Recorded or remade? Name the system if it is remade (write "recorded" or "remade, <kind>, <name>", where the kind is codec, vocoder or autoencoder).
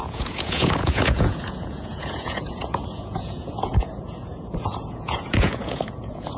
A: remade, vocoder, Vocos